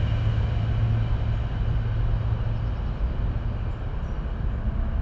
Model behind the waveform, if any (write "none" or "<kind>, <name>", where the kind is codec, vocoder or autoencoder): none